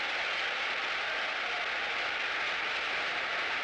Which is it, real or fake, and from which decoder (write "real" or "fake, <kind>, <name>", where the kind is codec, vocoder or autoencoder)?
real